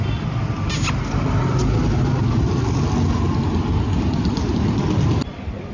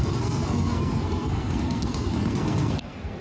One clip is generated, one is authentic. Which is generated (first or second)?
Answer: second